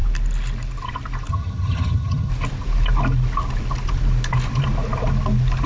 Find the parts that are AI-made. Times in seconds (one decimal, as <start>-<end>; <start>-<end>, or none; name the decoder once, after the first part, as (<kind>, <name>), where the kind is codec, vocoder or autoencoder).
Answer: 1.3-2.3 (vocoder, HiFi-GAN)